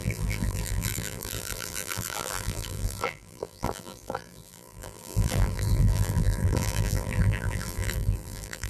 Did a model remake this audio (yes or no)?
yes